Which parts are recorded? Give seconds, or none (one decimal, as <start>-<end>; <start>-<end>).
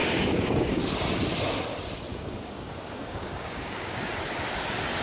0.8-2.1; 4.1-5.0